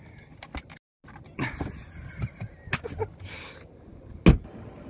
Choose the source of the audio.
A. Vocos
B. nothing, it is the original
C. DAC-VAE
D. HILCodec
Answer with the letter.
B